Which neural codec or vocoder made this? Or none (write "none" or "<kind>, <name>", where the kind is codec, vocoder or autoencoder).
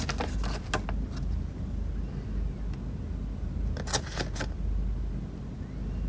none